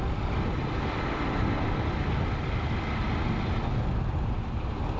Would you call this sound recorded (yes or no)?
yes